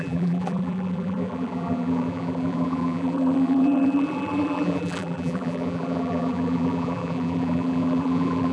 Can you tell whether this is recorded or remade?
remade